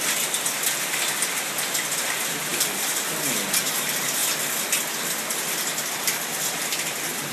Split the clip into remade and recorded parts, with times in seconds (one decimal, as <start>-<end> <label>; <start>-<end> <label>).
0.0-7.3 recorded